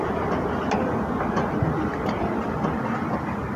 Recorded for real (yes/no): yes